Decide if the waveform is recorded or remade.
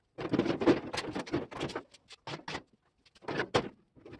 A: recorded